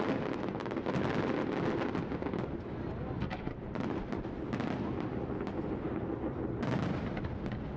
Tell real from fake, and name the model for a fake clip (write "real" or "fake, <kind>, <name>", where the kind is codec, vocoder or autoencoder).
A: real